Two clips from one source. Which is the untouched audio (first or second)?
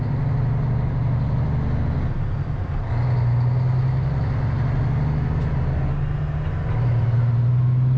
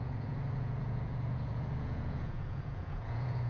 first